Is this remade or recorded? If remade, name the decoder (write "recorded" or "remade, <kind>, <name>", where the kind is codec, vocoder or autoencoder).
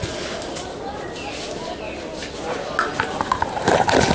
recorded